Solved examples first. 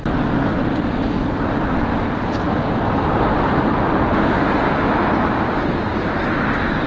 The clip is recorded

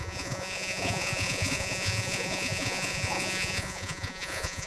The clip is remade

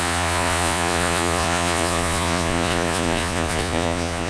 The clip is remade